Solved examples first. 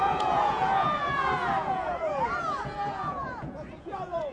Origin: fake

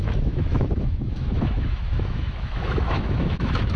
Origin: fake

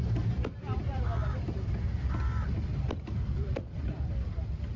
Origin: fake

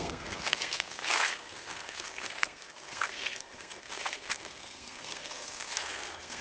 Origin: fake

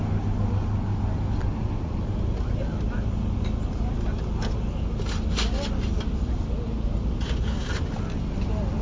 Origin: real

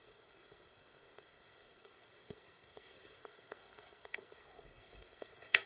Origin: fake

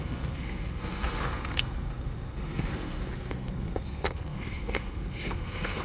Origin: fake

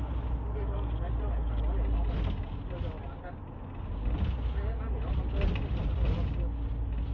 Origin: real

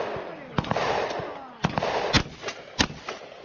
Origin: real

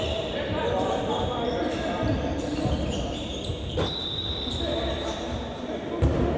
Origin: fake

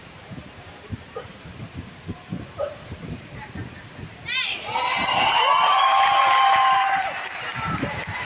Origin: fake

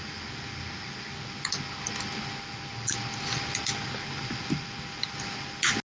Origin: real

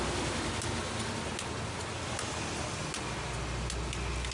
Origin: real